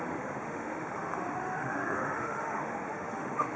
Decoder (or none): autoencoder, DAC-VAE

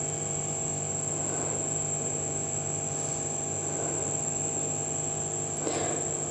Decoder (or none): none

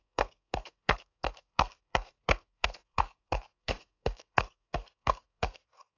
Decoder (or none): codec, SNAC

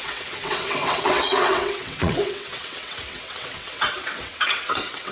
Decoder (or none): vocoder, WaveNeXt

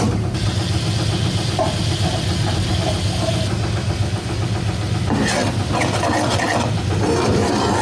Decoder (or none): none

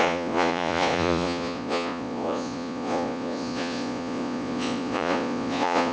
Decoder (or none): vocoder, Vocos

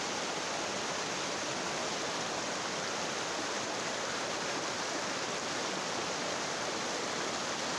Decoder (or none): none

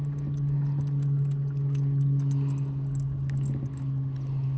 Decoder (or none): none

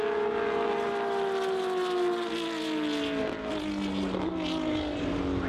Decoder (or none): none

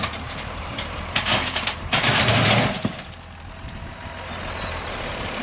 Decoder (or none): vocoder, BigVGAN v2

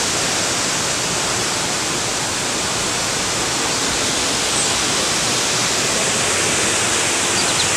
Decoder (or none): none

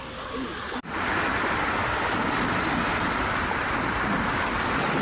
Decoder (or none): none